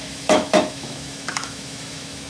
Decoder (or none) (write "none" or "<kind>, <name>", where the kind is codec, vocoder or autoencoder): autoencoder, DAC-VAE